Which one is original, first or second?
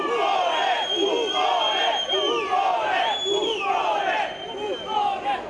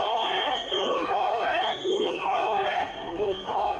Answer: first